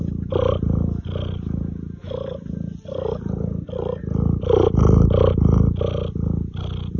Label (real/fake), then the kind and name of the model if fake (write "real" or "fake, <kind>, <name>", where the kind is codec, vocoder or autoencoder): real